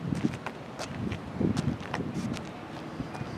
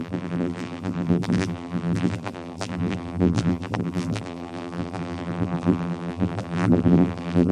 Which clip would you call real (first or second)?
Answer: first